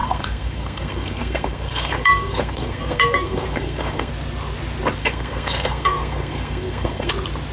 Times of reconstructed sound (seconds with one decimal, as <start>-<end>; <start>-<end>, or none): 0.0-4.1; 5.0-7.1